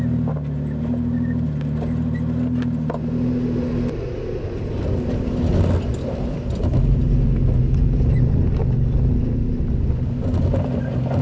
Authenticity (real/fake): real